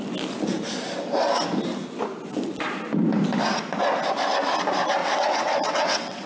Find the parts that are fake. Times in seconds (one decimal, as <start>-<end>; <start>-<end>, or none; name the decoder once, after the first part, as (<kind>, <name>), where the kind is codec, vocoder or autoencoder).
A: 5.0-6.3 (vocoder, WaveNeXt)